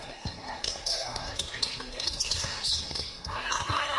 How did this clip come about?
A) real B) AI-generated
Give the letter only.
B